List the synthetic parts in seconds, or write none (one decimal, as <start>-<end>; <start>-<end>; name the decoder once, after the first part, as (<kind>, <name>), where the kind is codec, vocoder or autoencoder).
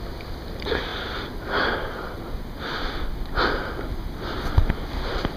none